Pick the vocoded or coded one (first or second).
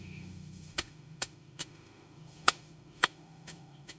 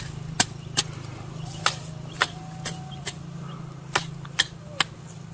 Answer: first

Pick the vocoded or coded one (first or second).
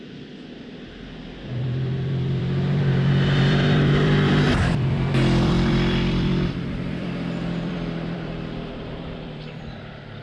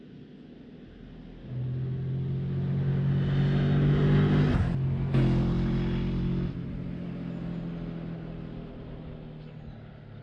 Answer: first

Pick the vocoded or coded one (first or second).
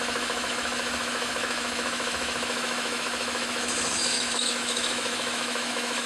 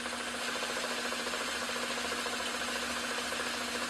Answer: first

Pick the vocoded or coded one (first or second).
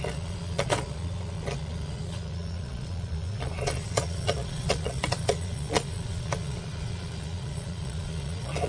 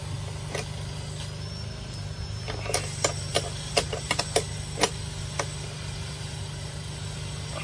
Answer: first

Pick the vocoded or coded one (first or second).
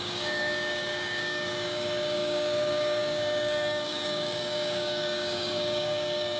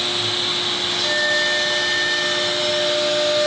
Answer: first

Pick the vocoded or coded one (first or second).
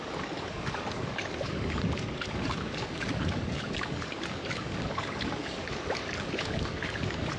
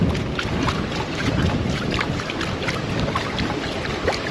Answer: first